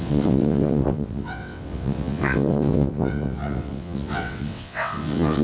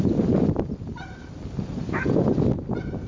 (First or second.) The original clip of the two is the second